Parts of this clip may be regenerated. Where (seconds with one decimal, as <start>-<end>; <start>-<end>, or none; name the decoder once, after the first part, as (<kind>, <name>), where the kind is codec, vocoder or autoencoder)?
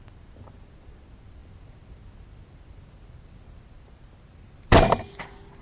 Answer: 0.0-5.6 (vocoder, BigVGAN v2)